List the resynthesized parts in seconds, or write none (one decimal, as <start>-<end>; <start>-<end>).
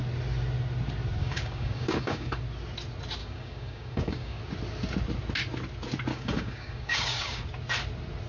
1.2-2.4; 3.2-4.4; 6.1-7.4